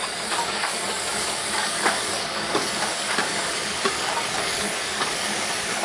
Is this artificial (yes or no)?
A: yes